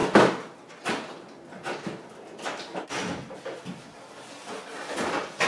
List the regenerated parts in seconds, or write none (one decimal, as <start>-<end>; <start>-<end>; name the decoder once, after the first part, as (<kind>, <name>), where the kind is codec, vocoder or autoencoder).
none